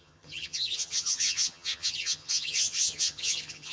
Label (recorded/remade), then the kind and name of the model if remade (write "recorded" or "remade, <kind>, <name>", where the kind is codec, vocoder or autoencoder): remade, vocoder, HiFi-GAN